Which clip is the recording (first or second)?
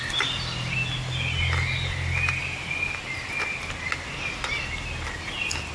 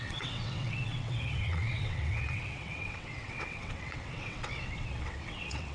first